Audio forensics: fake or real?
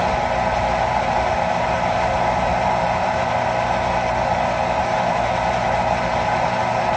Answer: real